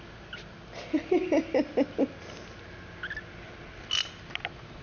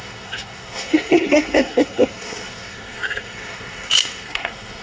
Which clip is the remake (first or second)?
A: second